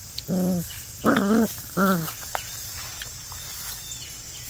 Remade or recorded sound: recorded